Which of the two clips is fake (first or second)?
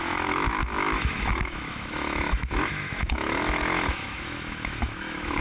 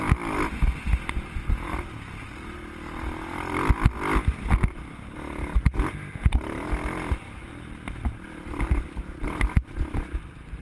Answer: first